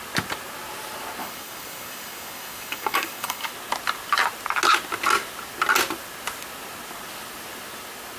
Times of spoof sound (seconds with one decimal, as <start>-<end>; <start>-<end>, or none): 1.2-3.5